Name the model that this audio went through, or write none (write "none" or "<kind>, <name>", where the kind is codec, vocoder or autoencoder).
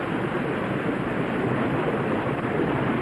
none